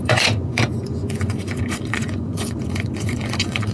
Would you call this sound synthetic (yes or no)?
yes